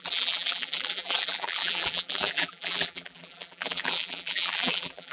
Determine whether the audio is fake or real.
fake